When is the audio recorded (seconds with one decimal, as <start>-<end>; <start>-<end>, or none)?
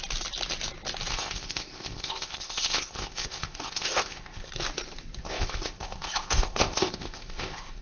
0.0-1.1; 4.5-5.2